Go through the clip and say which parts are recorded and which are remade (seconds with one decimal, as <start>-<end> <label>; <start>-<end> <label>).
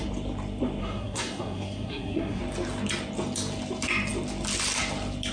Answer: 0.0-0.8 recorded; 0.8-2.4 remade; 2.4-5.3 recorded